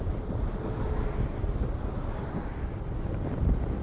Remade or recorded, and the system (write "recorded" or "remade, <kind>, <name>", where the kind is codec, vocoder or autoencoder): recorded